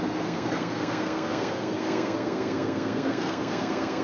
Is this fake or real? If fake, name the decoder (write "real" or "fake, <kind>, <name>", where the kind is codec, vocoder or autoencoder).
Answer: fake, codec, SNAC